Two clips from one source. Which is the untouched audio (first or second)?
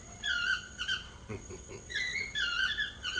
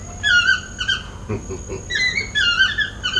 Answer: second